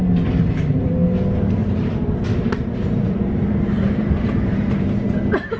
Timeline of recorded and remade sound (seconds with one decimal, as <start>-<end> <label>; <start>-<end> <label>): 0.0-0.4 recorded; 0.4-0.9 remade; 0.9-1.6 recorded; 1.6-5.0 remade; 5.0-5.6 recorded